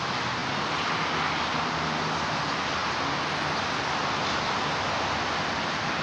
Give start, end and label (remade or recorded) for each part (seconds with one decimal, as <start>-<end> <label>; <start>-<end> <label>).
0.0-6.0 recorded